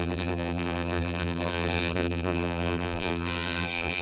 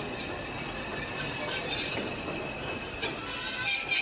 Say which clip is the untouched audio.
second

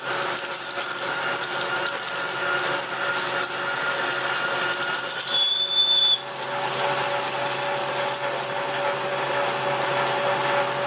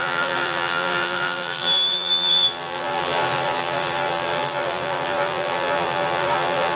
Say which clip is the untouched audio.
first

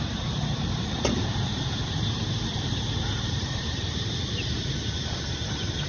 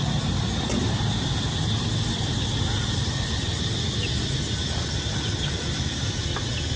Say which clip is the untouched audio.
second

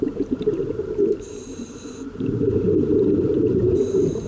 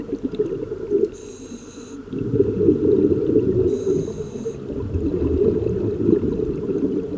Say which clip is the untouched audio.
second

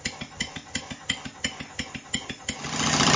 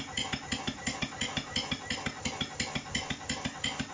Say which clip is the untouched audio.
second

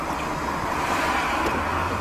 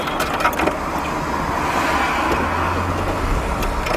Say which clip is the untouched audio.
second